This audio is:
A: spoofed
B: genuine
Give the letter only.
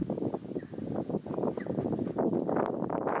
B